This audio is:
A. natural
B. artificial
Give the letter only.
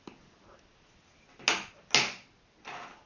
A